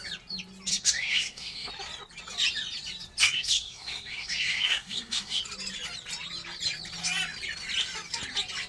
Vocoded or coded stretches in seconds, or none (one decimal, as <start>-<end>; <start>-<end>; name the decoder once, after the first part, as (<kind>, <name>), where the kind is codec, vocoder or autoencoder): 0.7-1.7 (codec, SNAC); 3.2-5.4